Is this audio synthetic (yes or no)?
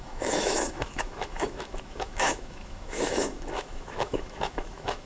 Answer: yes